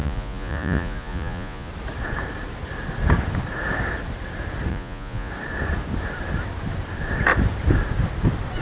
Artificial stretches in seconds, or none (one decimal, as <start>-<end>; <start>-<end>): 0.0-1.7; 4.7-5.3